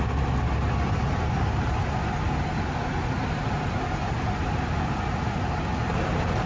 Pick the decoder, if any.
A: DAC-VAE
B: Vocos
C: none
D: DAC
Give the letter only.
C